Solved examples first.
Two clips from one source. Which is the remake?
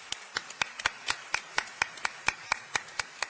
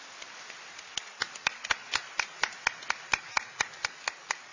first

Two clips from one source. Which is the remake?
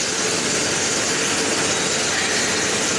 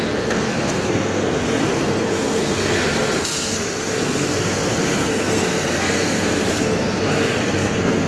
second